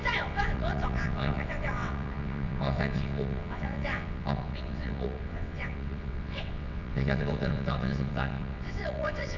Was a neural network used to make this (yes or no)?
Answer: yes